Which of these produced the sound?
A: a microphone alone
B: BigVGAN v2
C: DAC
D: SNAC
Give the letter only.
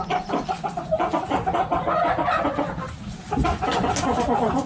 A